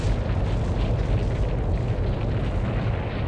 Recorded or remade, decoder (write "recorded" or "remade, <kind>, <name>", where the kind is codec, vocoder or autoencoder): recorded